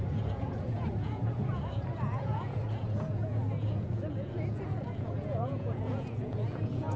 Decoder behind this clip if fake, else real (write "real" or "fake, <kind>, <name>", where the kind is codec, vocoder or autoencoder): fake, vocoder, Vocos